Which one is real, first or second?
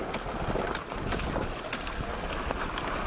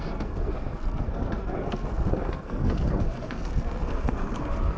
first